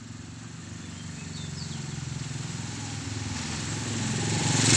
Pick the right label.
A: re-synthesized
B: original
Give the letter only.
B